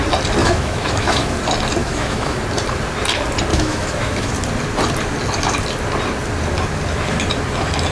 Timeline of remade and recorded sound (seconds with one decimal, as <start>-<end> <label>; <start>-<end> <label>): 0.0-0.4 recorded; 0.4-1.4 remade; 1.4-1.8 recorded; 1.8-2.4 remade; 2.4-3.5 recorded; 3.5-4.3 remade; 4.3-7.9 recorded